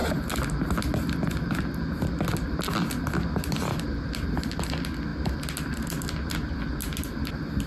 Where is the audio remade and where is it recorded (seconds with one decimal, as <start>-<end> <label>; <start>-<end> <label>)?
0.0-7.7 recorded

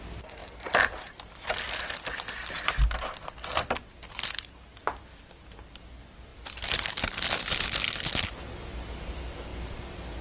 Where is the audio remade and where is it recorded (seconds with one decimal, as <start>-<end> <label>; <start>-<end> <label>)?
0.0-10.2 recorded

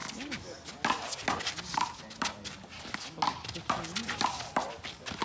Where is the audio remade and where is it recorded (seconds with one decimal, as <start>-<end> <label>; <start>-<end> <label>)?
0.0-5.2 recorded